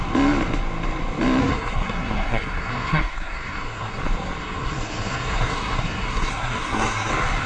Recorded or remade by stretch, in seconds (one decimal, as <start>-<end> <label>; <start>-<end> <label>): 0.0-1.4 recorded; 1.4-4.0 remade; 4.0-4.4 recorded; 4.4-7.1 remade; 7.1-7.5 recorded